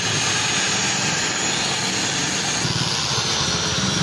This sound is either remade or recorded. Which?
recorded